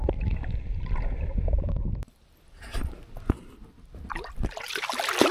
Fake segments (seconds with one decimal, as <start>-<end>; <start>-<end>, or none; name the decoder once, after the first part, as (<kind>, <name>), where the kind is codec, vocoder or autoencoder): 0.7-3.9 (vocoder, BigVGAN v2)